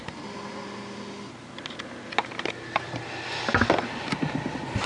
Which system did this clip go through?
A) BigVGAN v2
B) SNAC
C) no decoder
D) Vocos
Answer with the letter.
C